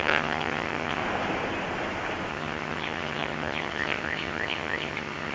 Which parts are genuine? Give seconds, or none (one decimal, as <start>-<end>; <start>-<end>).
1.0-2.3